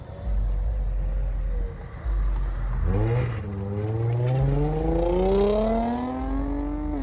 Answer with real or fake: real